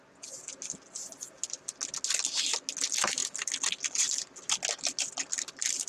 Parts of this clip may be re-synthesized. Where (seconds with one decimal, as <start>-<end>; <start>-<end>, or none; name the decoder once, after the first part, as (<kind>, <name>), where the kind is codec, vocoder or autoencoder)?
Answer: none